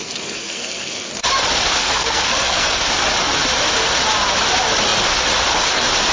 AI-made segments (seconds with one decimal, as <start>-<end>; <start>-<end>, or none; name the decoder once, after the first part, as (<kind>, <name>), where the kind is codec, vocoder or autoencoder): 0.0-1.1 (codec, SNAC); 1.8-2.7